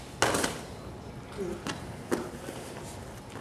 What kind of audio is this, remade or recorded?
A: recorded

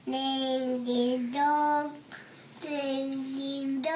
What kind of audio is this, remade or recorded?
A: recorded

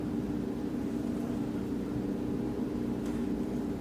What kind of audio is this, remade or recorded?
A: remade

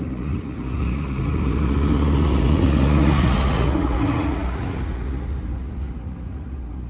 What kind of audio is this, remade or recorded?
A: remade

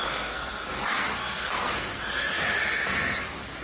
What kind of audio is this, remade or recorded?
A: remade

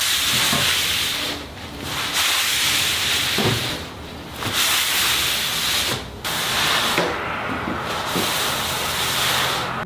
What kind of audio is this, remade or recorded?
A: remade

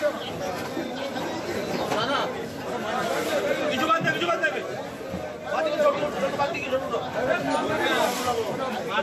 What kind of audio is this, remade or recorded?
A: recorded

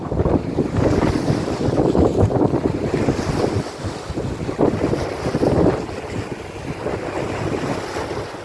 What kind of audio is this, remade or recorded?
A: recorded